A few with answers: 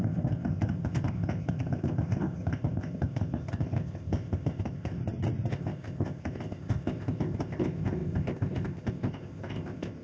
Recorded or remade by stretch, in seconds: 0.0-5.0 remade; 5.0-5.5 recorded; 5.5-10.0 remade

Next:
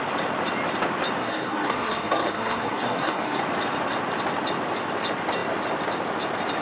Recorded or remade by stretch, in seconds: 0.0-1.2 recorded; 1.2-3.4 remade; 3.4-6.6 recorded

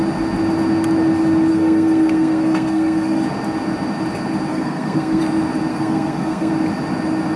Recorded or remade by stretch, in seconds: 0.0-1.5 recorded; 1.5-3.2 remade; 3.2-4.5 recorded; 4.5-5.2 remade; 5.2-5.7 recorded; 5.7-6.5 remade; 6.5-7.4 recorded